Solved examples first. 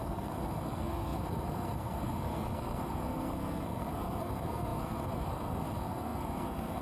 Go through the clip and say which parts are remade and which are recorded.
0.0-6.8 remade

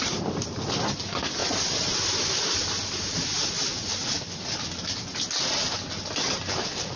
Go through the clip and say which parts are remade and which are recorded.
0.0-1.4 recorded; 1.4-3.5 remade; 3.5-7.0 recorded

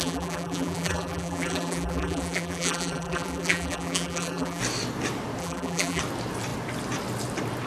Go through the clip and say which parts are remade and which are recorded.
0.0-4.6 remade; 4.6-5.4 recorded; 5.4-6.0 remade; 6.0-7.7 recorded

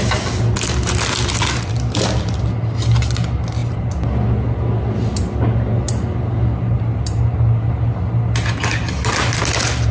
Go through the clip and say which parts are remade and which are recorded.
0.0-9.9 recorded

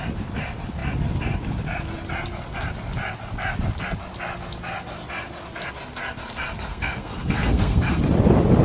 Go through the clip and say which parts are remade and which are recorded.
0.0-6.7 recorded; 6.7-8.0 remade; 8.0-8.6 recorded

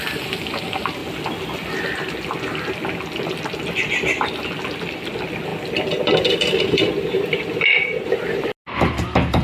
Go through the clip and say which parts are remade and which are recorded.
0.0-9.4 recorded

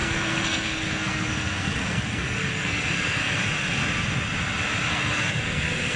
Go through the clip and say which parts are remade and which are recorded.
0.0-3.4 remade; 3.4-4.9 recorded; 4.9-6.0 remade